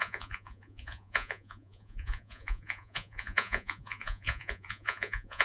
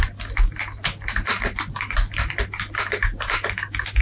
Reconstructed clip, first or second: first